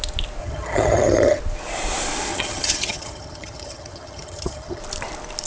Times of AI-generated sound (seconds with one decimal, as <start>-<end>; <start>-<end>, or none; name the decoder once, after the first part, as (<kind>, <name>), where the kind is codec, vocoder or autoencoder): 0.4-1.4 (vocoder, HiFi-GAN); 2.3-4.8